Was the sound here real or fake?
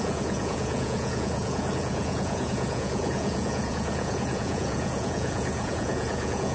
fake